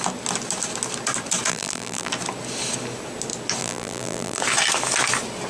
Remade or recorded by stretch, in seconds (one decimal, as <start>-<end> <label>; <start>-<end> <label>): 0.0-1.5 recorded; 1.5-2.1 remade; 2.1-3.6 recorded; 3.6-4.4 remade; 4.4-5.5 recorded